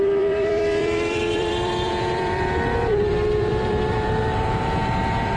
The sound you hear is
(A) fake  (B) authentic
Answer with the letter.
A